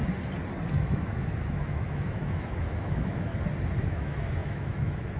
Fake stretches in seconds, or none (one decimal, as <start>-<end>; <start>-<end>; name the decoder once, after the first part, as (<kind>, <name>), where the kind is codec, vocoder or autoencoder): 0.7-3.3 (autoencoder, DAC-VAE); 3.8-5.2